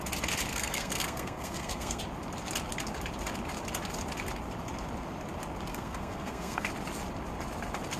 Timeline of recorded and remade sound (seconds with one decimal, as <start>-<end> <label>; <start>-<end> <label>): 0.0-0.5 recorded; 0.5-2.0 remade; 2.0-5.7 recorded; 5.7-6.7 remade; 6.7-8.0 recorded